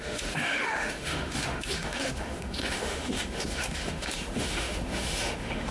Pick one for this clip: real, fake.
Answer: fake